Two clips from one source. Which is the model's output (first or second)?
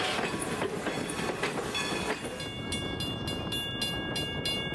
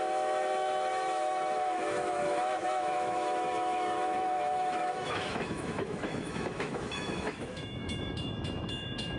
second